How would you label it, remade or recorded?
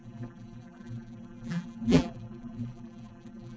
remade